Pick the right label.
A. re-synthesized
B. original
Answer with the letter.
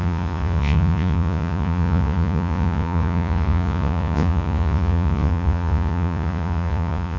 A